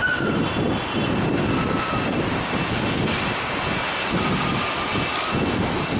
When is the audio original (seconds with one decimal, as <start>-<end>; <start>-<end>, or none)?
0.0-6.0